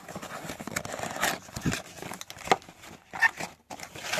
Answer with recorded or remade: recorded